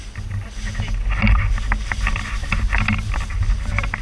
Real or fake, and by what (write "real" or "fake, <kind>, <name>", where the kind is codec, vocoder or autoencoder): real